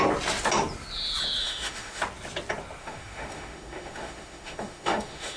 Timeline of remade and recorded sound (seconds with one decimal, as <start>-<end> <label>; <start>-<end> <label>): 0.0-1.4 recorded; 1.4-2.0 remade; 2.0-2.8 recorded; 2.8-5.4 remade